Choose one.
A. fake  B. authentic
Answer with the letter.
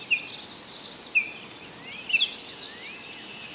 B